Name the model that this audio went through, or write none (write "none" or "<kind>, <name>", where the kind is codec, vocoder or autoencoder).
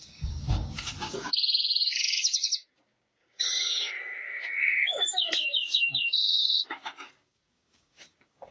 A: codec, DAC